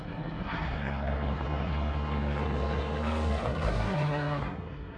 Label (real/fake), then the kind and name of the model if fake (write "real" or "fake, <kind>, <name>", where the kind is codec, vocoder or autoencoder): fake, codec, SNAC